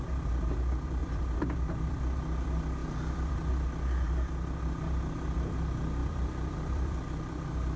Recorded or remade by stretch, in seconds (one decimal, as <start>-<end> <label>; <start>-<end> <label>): 0.0-1.0 recorded; 1.0-2.0 remade; 2.0-2.8 recorded; 2.8-3.5 remade; 3.5-6.0 recorded; 6.0-7.0 remade; 7.0-7.8 recorded